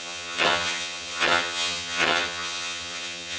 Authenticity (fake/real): fake